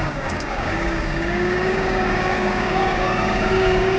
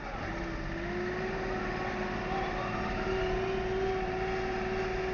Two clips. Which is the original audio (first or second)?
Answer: second